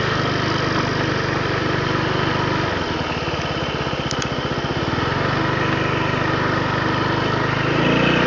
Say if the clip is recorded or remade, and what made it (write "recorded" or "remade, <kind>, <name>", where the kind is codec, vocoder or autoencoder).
recorded